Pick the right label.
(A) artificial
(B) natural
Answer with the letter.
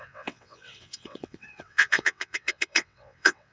A